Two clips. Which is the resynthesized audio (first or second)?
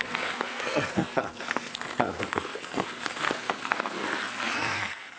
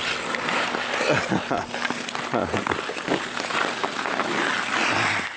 first